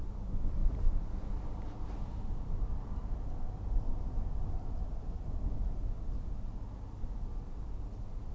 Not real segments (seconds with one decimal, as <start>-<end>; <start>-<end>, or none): none